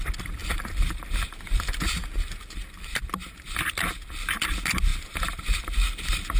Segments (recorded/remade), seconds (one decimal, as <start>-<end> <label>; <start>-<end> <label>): 0.0-0.4 recorded; 0.4-3.6 remade; 3.6-4.9 recorded; 4.9-5.6 remade; 5.6-6.4 recorded